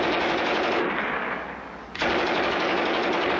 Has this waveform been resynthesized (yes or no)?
yes